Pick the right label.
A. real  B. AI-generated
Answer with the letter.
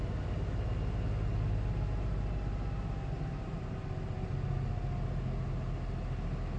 A